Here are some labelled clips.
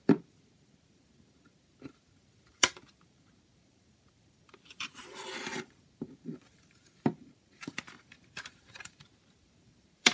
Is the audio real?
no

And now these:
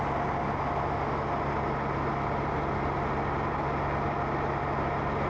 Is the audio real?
yes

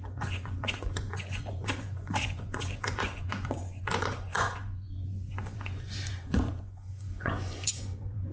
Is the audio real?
no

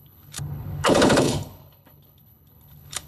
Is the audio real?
no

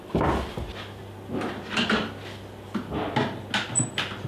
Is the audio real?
yes